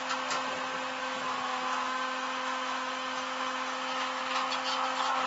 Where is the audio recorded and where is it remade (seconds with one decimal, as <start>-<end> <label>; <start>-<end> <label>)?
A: 0.0-1.0 recorded; 1.0-4.2 remade; 4.2-5.3 recorded